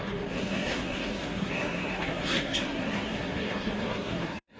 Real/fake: fake